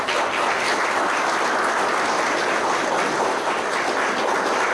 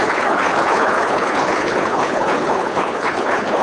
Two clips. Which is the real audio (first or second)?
first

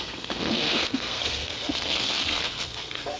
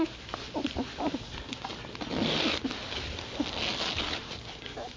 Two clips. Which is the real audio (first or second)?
second